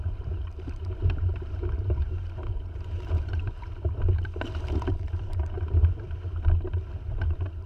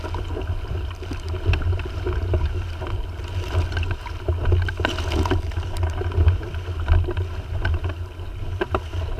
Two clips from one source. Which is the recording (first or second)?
second